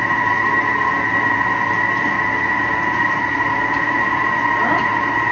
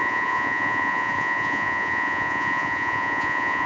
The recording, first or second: first